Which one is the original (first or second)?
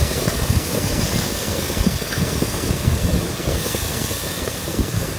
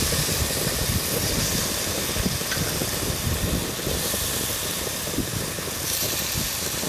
second